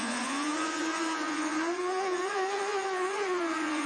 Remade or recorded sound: remade